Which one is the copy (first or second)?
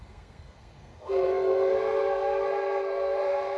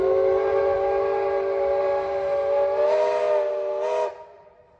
first